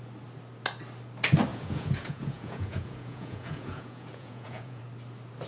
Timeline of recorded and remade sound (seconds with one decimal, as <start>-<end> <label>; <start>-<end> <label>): 0.0-1.5 recorded; 1.5-4.8 remade; 4.8-5.5 recorded